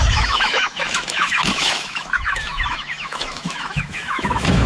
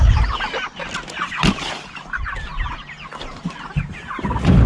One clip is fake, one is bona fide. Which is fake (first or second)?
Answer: first